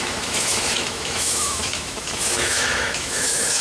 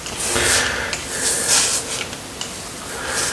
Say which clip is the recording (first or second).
second